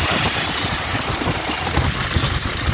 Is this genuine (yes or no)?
no